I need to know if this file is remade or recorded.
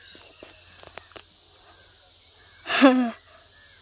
recorded